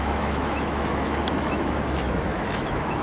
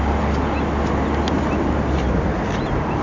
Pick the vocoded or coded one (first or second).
first